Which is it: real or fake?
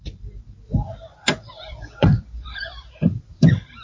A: fake